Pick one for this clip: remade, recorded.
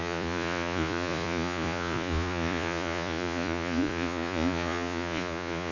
remade